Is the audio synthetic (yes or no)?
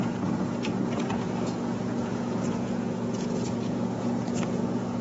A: yes